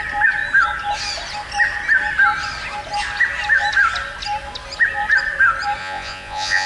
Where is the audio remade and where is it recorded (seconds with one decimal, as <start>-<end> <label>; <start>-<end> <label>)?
0.0-5.8 recorded; 5.8-6.7 remade